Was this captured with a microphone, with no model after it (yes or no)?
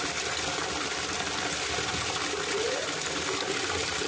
yes